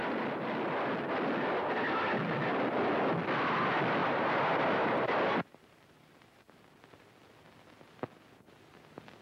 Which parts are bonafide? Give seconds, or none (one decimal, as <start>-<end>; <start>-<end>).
0.0-4.0; 7.1-9.2